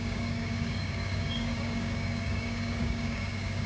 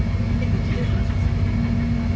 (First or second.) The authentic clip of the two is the second